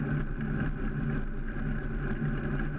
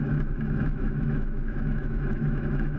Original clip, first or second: first